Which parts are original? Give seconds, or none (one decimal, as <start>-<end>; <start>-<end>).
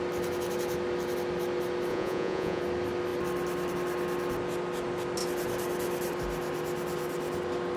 0.0-1.9; 2.6-7.8